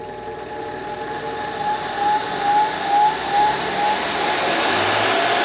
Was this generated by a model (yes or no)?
no